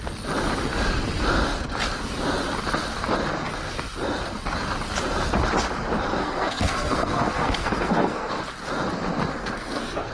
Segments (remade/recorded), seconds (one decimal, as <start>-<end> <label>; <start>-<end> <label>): 0.0-6.2 recorded; 6.2-8.4 remade; 8.4-9.3 recorded; 9.3-10.1 remade

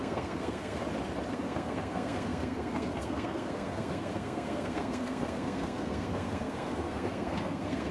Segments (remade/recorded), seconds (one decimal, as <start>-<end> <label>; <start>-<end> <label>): 0.0-0.8 remade; 0.8-1.3 recorded; 1.3-7.9 remade

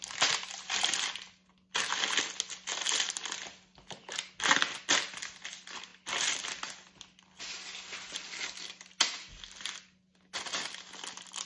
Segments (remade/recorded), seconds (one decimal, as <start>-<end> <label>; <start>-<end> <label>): 0.0-11.4 recorded

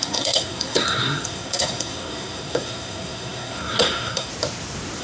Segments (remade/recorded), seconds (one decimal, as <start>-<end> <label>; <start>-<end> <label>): 0.0-4.3 remade; 4.3-5.0 recorded

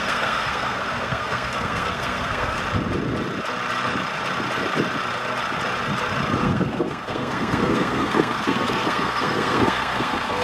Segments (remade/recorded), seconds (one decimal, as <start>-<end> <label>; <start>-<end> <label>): 0.0-2.6 remade; 2.6-6.4 recorded; 6.4-10.4 remade

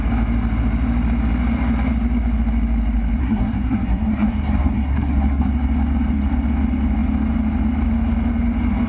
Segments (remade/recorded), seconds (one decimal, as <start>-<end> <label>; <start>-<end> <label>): 0.0-3.2 recorded; 3.2-5.5 remade; 5.5-8.9 recorded

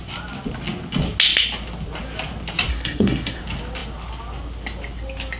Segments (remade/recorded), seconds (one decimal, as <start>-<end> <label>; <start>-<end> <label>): 0.0-2.7 recorded; 2.7-3.4 remade; 3.4-5.4 recorded